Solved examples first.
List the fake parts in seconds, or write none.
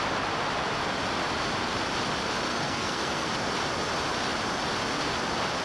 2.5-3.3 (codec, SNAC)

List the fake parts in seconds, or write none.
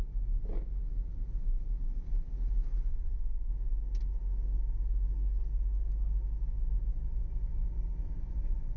2.9-3.5 (vocoder, WaveNeXt)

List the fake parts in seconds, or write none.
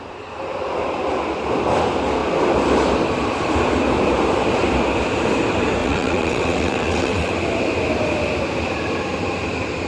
5.8-7.3 (vocoder, WaveNeXt)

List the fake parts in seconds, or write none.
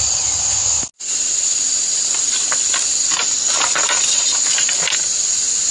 none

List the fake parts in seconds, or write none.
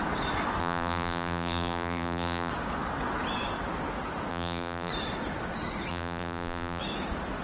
0.6-2.5 (vocoder, BigVGAN v2); 4.3-4.9; 5.9-6.8